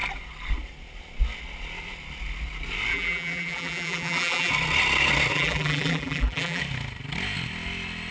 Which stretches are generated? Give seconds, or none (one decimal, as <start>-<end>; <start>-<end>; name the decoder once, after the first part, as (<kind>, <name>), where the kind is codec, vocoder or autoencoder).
2.9-4.5 (vocoder, BigVGAN v2); 5.3-6.6